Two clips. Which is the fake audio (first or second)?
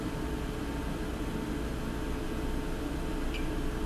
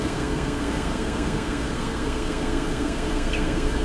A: second